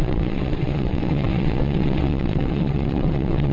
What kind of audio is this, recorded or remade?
remade